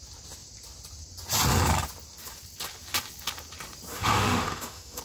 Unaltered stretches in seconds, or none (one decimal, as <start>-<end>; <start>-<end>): 0.0-3.9